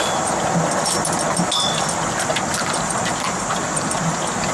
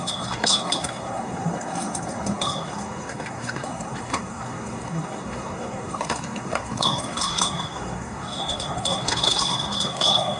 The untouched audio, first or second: first